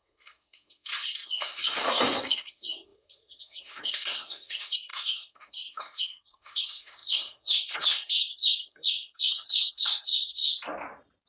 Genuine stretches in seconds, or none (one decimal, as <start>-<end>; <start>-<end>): 10.5-11.3